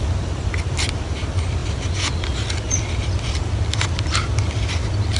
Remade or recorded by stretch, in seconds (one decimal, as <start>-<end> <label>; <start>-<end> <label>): 0.0-5.2 recorded